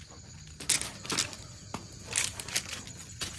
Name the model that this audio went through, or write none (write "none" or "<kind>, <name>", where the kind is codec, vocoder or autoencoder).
none